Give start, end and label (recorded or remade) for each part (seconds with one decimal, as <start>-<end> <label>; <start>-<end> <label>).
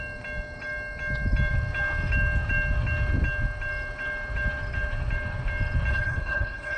0.0-5.9 recorded; 5.9-6.8 remade